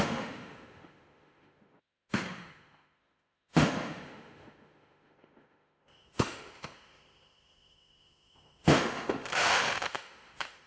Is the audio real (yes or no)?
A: no